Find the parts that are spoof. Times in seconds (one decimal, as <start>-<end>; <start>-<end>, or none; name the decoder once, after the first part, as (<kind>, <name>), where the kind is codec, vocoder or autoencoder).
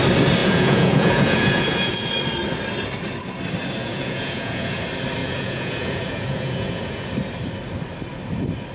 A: 0.4-2.1 (vocoder, Vocos); 3.8-4.8; 5.2-7.1